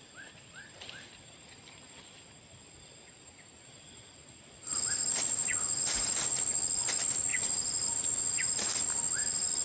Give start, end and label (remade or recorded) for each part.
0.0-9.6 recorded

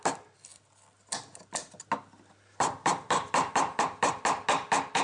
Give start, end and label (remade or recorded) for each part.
0.0-5.0 recorded

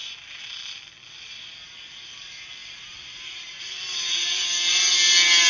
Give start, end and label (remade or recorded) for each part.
0.0-2.6 recorded; 2.6-3.8 remade; 3.8-5.5 recorded

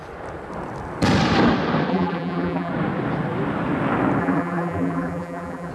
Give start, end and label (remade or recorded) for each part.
0.0-1.9 recorded; 1.9-2.7 remade; 2.7-4.2 recorded; 4.2-5.7 remade

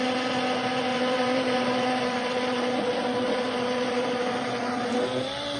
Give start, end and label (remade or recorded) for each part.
0.0-0.9 recorded; 0.9-4.3 remade; 4.3-5.6 recorded